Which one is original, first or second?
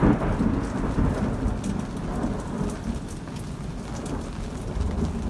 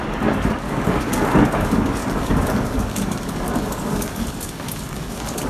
first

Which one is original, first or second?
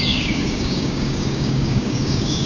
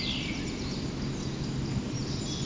second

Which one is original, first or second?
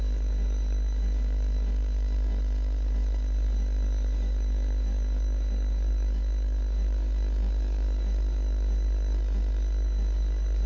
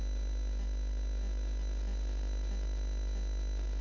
second